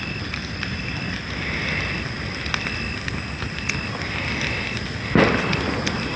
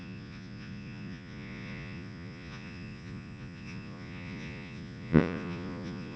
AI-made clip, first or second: second